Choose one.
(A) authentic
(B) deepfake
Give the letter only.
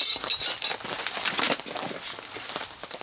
A